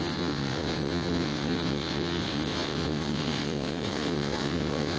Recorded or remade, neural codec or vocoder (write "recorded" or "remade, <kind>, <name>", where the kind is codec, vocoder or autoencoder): remade, vocoder, WaveNeXt